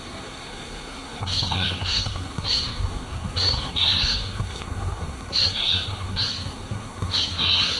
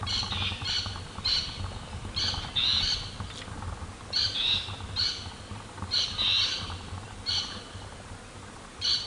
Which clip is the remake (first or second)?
first